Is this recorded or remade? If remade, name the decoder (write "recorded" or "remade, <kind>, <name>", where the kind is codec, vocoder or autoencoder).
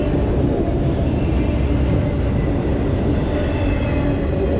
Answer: recorded